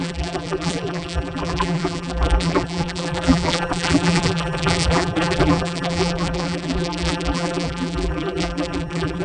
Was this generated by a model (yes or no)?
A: yes